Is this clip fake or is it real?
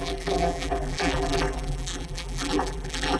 fake